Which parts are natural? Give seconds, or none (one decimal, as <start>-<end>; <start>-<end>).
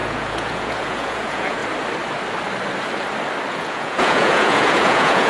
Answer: 1.6-3.5